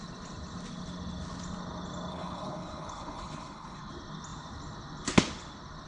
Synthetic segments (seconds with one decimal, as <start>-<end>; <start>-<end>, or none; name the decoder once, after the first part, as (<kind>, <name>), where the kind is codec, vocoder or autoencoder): 2.1-3.9 (codec, HILCodec)